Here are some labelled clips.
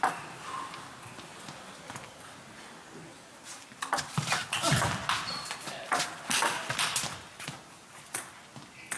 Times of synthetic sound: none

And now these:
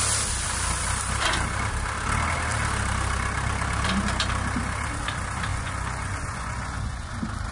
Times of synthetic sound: 5.5-7.1 (vocoder, Vocos)

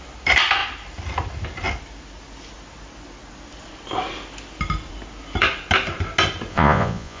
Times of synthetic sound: 6.5-7.2 (vocoder, Vocos)

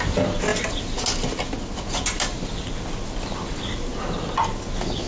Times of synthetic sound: none

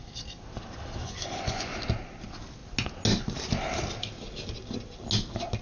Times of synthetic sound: 1.0-1.7 (vocoder, Vocos)

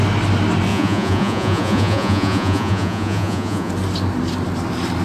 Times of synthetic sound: 0.7-3.7 (vocoder, Vocos)